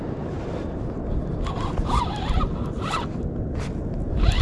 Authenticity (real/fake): real